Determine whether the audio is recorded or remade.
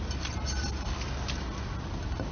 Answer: recorded